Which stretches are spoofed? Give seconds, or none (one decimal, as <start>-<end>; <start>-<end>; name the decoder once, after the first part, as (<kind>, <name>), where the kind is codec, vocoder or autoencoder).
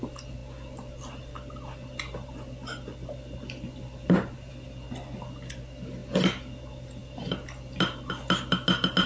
none